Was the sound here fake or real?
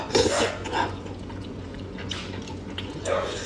fake